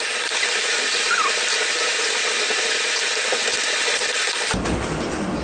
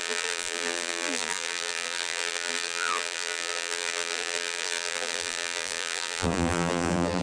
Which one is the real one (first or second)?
first